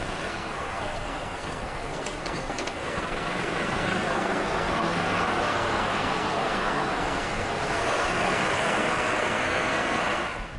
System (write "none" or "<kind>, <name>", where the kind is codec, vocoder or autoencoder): codec, SNAC